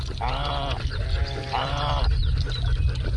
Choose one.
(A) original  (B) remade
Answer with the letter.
B